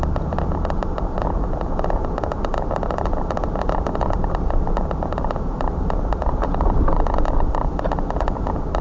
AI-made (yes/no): yes